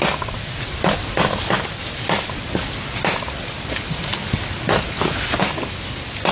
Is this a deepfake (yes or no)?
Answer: no